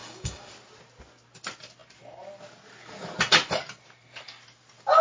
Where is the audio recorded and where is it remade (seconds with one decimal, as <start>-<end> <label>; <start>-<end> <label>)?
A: 0.0-0.5 remade; 0.5-5.0 recorded